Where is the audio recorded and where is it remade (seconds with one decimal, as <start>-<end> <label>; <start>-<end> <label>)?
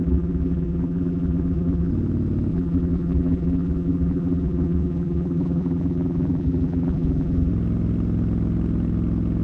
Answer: 0.0-1.9 remade; 1.9-2.5 recorded; 2.5-7.5 remade; 7.5-9.4 recorded